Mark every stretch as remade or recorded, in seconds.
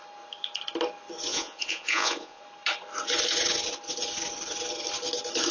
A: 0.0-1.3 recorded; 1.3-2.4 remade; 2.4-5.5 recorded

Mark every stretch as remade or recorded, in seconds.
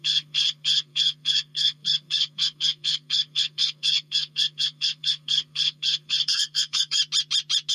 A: 0.0-7.0 remade; 7.0-7.7 recorded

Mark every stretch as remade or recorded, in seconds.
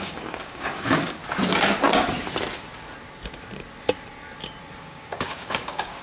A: 0.0-1.2 remade; 1.2-4.8 recorded; 4.8-6.0 remade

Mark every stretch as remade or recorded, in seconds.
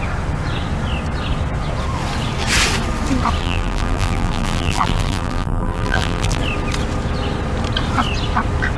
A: 0.0-3.4 recorded; 3.4-6.4 remade; 6.4-8.8 recorded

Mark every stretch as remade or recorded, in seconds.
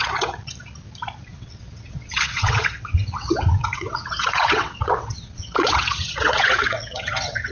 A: 0.0-0.4 remade; 0.4-1.3 recorded; 1.3-7.5 remade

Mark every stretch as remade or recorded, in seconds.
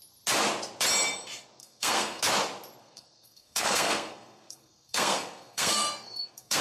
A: 0.0-1.6 recorded; 1.6-2.2 remade; 2.2-2.8 recorded; 2.8-6.6 remade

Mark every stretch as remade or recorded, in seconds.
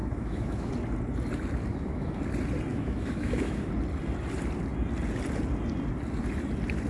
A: 0.0-0.7 remade; 0.7-1.7 recorded; 1.7-2.2 remade; 2.2-2.7 recorded; 2.7-3.7 remade; 3.7-6.9 recorded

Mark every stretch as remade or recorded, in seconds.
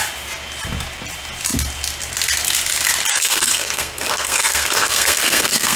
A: 0.0-3.1 recorded; 3.1-5.8 remade